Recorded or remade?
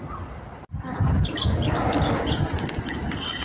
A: recorded